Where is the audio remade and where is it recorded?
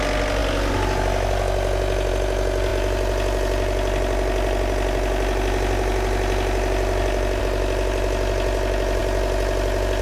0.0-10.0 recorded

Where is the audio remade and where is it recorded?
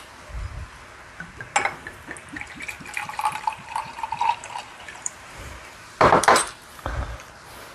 0.0-2.2 recorded; 2.2-6.2 remade; 6.2-7.7 recorded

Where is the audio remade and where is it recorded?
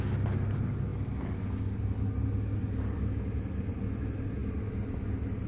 0.0-5.5 recorded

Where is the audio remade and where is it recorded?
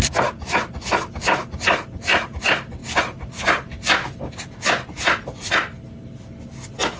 0.0-7.0 recorded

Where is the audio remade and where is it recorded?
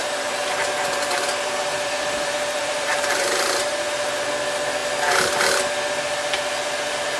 0.0-4.3 remade; 4.3-7.2 recorded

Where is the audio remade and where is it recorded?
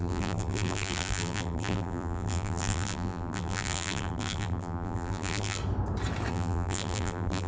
0.0-5.6 remade; 5.6-6.3 recorded; 6.3-7.5 remade